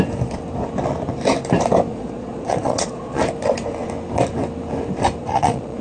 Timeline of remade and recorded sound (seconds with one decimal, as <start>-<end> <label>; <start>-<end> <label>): 0.0-1.9 recorded; 1.9-3.2 remade; 3.2-5.2 recorded; 5.2-5.8 remade